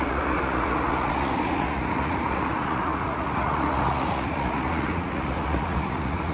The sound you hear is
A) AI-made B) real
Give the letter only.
A